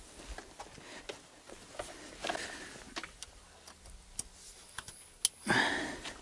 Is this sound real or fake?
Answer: real